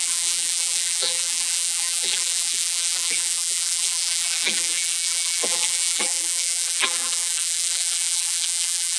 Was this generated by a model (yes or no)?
yes